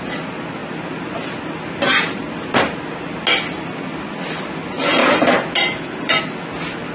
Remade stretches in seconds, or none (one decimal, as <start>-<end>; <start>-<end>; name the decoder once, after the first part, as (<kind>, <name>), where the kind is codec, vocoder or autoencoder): 0.6-1.2 (vocoder, BigVGAN v2); 5.0-6.2